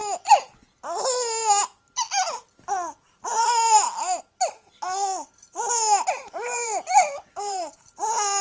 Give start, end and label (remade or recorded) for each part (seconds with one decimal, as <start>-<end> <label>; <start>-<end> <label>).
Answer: 0.0-3.3 recorded; 3.3-4.2 remade; 4.2-6.2 recorded; 6.2-7.9 remade; 7.9-8.4 recorded